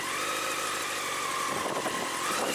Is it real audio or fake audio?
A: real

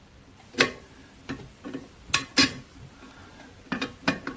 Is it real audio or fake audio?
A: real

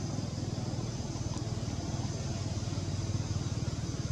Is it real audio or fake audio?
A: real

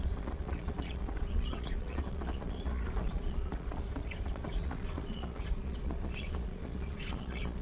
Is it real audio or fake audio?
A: fake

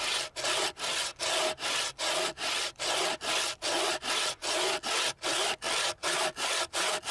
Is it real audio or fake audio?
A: real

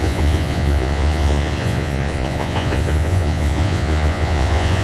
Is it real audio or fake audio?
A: fake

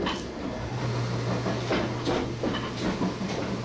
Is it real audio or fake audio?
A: real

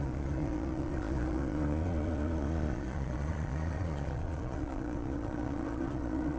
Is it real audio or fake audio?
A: fake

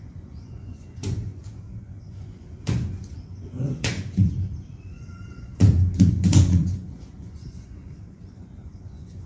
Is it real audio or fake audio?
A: fake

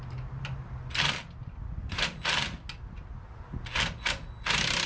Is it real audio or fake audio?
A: real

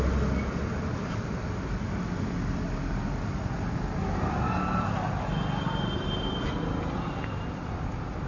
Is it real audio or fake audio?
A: real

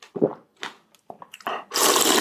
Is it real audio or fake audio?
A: real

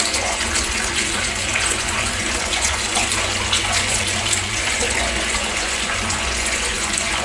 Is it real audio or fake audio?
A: fake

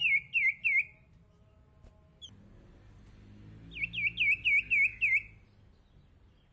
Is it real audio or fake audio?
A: real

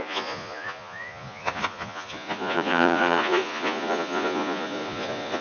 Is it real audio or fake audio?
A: fake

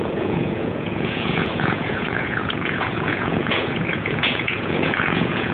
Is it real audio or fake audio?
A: fake